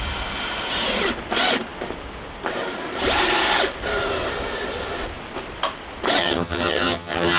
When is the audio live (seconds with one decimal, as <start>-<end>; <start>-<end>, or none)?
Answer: 0.0-6.2